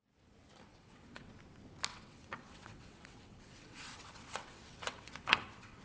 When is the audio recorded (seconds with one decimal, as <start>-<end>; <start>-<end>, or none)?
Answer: 0.0-0.7; 1.3-1.9

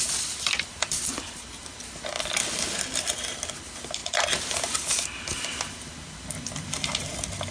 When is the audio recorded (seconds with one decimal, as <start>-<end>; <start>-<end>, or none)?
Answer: 0.0-7.5

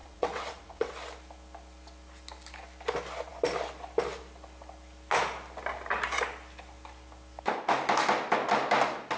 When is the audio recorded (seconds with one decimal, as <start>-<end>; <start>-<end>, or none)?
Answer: 0.9-9.2

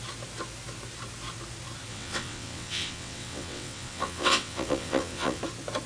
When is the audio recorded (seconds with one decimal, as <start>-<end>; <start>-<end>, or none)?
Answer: 0.0-1.9; 5.4-5.9